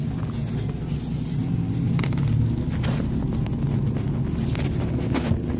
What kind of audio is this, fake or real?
real